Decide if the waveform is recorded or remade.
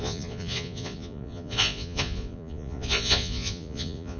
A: remade